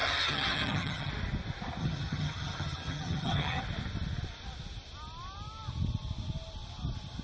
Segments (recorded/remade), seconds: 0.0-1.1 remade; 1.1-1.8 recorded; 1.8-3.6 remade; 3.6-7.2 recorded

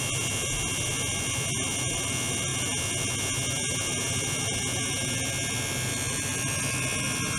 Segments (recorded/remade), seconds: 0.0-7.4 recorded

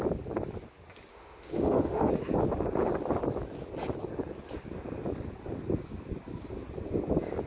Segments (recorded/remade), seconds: 0.0-1.1 recorded; 1.1-2.1 remade; 2.1-7.5 recorded

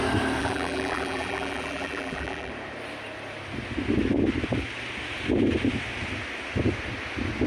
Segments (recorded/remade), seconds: 0.0-0.4 recorded; 0.4-2.5 remade; 2.5-7.5 recorded

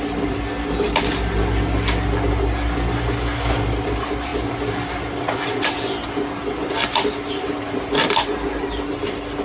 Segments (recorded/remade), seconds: 0.0-9.4 recorded

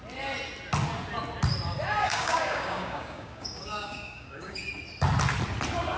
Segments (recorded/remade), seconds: 0.0-2.0 recorded; 2.0-4.7 remade; 4.7-6.0 recorded

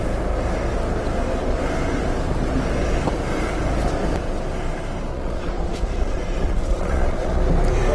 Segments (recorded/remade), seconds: 0.0-5.1 recorded; 5.1-7.4 remade; 7.4-7.9 recorded